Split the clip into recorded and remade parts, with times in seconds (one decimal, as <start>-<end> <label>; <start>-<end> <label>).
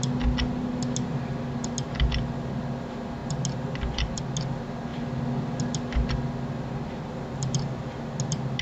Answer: 0.0-8.6 recorded